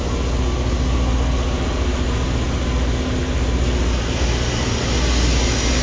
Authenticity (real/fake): real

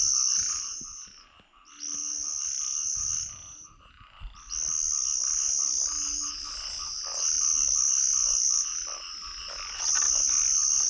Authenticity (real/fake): real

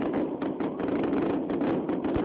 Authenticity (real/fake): real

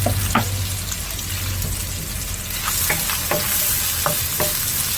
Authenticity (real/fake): real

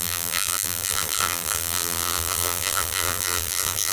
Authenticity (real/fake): fake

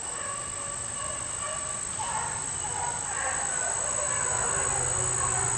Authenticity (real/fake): real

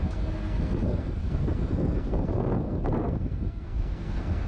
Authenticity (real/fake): fake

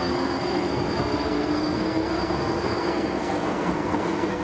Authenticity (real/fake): fake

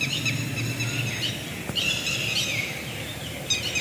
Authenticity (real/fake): real